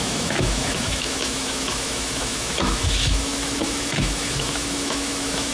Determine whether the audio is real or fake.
fake